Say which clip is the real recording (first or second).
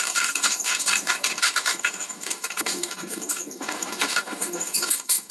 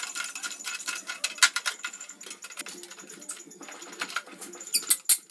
second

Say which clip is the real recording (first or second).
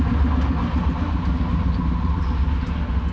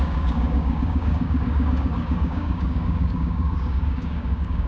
first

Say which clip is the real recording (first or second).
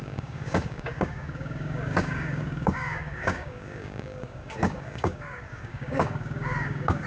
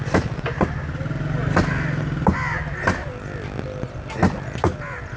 second